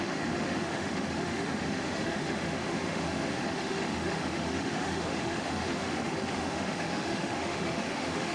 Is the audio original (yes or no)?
no